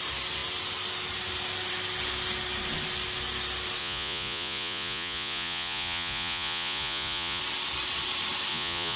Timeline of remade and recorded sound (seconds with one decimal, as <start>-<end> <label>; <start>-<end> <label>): 0.0-3.8 recorded; 3.8-7.4 remade; 7.4-8.5 recorded; 8.5-9.0 remade